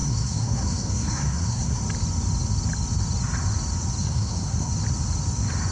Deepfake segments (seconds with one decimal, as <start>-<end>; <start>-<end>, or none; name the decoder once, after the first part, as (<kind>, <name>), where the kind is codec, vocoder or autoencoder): 0.0-1.8 (codec, SNAC); 4.0-4.7